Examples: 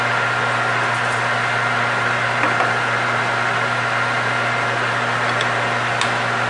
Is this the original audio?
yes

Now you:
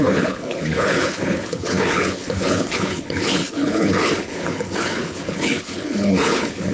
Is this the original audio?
no